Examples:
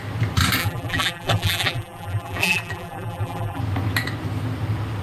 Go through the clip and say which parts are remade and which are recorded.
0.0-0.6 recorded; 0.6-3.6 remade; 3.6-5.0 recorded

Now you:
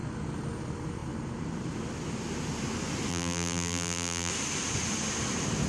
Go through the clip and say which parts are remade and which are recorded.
0.0-3.1 recorded; 3.1-4.3 remade; 4.3-5.7 recorded

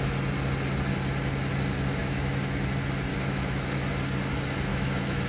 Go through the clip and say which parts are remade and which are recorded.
0.0-2.0 recorded; 2.0-2.7 remade; 2.7-3.1 recorded; 3.1-3.9 remade; 3.9-4.7 recorded; 4.7-5.3 remade

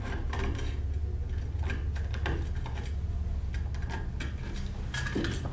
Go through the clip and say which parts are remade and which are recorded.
0.0-5.5 recorded

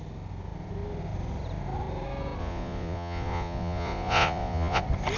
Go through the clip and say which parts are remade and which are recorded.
0.0-2.4 recorded; 2.4-4.8 remade; 4.8-5.2 recorded

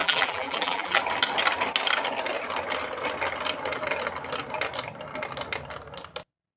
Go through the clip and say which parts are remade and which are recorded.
0.0-1.0 remade; 1.0-6.6 recorded

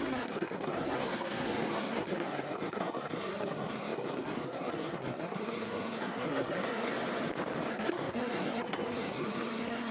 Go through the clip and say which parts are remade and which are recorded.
0.0-6.9 remade; 6.9-7.7 recorded; 7.7-9.9 remade